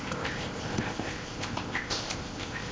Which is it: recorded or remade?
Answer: remade